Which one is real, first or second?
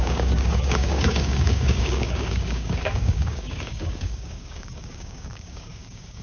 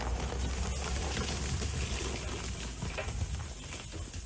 second